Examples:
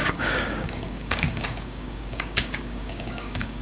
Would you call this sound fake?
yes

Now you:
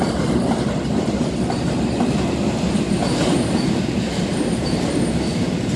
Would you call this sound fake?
no